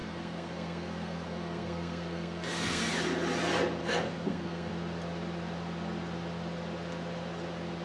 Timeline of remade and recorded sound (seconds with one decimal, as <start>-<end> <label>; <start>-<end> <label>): 0.0-2.8 remade; 2.8-3.8 recorded; 3.8-4.7 remade; 4.7-7.8 recorded